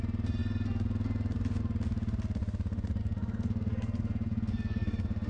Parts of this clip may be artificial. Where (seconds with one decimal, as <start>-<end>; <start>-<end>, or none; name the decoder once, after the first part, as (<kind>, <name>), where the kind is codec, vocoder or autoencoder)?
3.0-5.3 (codec, SNAC)